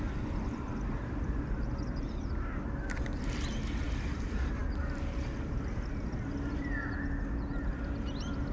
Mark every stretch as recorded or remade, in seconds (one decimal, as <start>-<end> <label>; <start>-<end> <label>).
0.0-8.5 recorded